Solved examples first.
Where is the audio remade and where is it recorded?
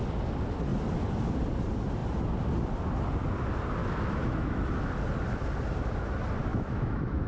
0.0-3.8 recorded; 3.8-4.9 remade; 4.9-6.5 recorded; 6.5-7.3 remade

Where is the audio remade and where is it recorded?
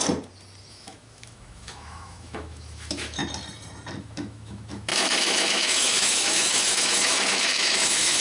0.0-0.7 recorded; 0.7-3.2 remade; 3.2-4.0 recorded; 4.0-8.2 remade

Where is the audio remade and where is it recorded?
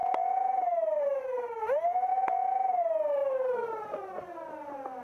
0.0-2.1 recorded; 2.1-2.8 remade; 2.8-5.0 recorded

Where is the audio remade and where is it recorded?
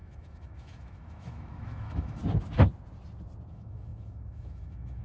0.0-2.2 remade; 2.2-3.5 recorded; 3.5-5.0 remade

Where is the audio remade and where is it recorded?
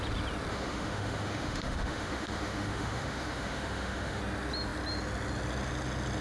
0.0-0.5 recorded; 0.5-4.2 remade; 4.2-6.2 recorded